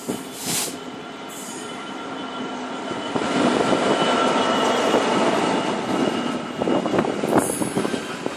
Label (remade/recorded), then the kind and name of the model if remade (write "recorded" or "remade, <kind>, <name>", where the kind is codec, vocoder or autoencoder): remade, vocoder, BigVGAN v2